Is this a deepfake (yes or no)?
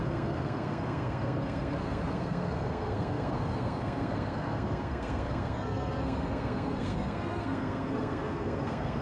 yes